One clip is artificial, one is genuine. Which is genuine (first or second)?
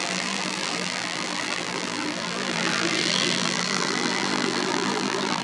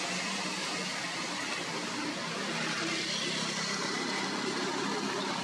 second